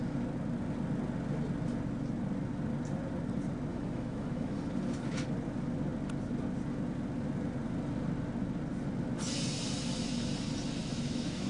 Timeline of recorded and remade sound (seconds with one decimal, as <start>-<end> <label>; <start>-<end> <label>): 0.0-3.7 recorded; 3.7-4.6 remade; 4.6-10.8 recorded; 10.8-11.5 remade